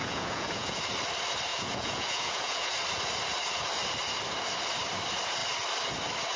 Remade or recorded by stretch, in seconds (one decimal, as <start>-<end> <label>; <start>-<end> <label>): 0.0-0.8 remade; 0.8-1.5 recorded; 1.5-2.7 remade; 2.7-6.4 recorded